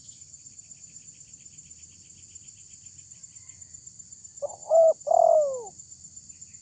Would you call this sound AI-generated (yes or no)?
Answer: no